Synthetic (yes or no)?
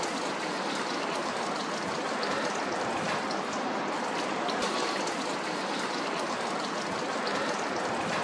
yes